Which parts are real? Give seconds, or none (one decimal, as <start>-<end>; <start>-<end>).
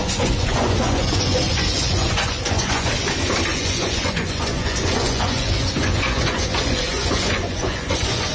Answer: 2.9-3.5